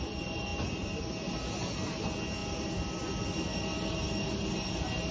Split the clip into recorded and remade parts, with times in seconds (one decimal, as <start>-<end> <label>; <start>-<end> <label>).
0.0-5.1 recorded